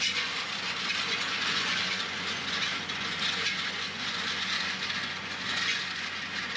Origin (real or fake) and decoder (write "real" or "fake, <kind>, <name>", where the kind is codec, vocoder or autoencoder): fake, vocoder, Vocos